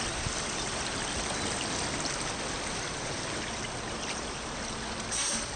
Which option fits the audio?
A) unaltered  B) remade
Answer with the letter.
A